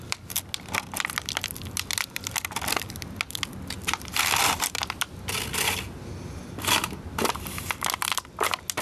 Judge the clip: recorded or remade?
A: recorded